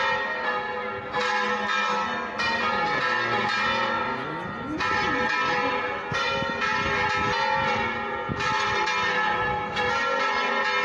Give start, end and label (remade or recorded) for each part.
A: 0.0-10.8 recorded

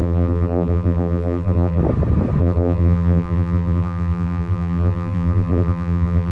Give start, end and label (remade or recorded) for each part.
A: 0.0-1.8 remade; 1.8-2.4 recorded; 2.4-6.3 remade

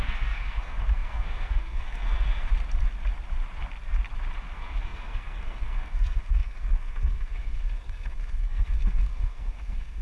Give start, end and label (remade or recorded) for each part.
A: 0.0-2.5 remade; 2.5-4.5 recorded; 4.5-10.0 remade

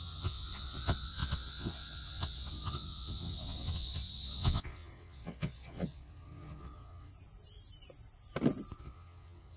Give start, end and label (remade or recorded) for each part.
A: 0.0-7.1 remade; 7.1-8.8 recorded; 8.8-9.6 remade